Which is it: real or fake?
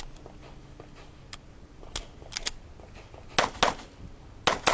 real